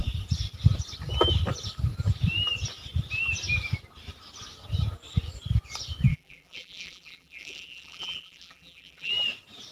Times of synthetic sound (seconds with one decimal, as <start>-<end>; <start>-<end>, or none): 6.1-9.1